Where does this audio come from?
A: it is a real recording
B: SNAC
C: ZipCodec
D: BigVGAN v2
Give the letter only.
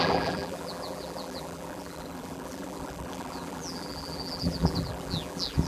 D